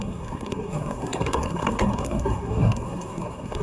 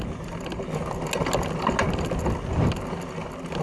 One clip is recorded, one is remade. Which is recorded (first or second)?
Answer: second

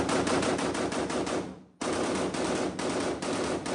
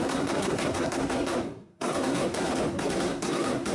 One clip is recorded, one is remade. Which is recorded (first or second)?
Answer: first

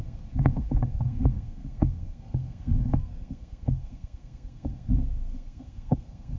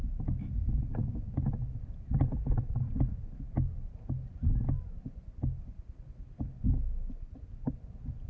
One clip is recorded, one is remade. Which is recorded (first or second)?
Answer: second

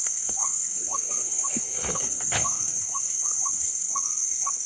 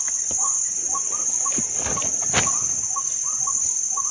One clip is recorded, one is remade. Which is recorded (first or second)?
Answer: second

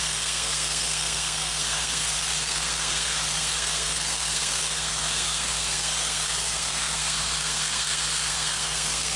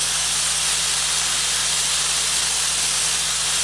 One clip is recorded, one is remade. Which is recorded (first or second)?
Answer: second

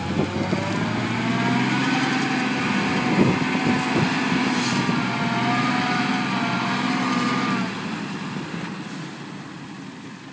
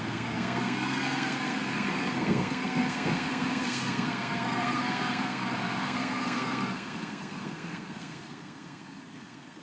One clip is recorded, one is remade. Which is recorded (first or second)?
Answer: first